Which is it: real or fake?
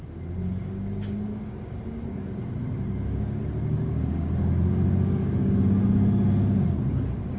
fake